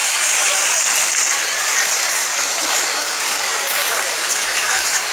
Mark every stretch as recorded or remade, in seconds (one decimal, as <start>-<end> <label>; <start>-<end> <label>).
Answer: 0.0-0.8 remade; 0.8-1.6 recorded; 1.6-5.1 remade